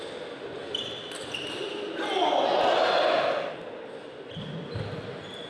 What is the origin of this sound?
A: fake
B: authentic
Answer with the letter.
B